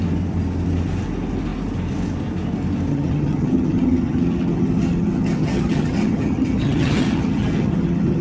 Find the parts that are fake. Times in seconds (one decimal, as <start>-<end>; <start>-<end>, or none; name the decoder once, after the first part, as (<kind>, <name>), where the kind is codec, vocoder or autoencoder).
2.9-8.2 (vocoder, HiFi-GAN)